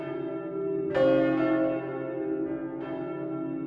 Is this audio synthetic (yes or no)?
no